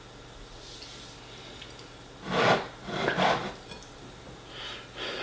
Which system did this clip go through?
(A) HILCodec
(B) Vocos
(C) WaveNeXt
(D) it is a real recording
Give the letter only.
D